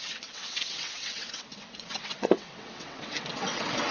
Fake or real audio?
fake